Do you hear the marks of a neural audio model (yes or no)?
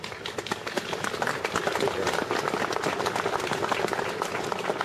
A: no